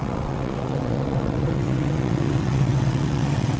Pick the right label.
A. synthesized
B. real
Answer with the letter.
A